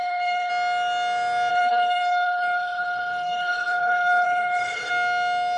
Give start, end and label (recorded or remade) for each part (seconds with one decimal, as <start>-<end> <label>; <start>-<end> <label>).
0.0-0.5 remade; 0.5-1.5 recorded; 1.5-4.9 remade; 4.9-5.6 recorded